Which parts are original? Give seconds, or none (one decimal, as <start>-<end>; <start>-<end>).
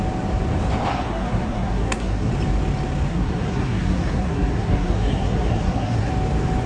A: 0.0-0.9; 2.3-3.1; 6.1-6.7